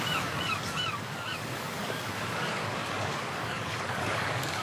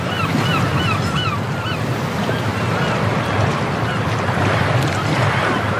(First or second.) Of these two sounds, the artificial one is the first